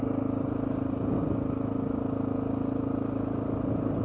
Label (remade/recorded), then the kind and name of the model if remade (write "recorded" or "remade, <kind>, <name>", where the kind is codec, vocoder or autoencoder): recorded